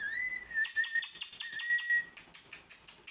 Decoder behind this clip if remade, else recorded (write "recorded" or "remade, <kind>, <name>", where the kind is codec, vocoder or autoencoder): recorded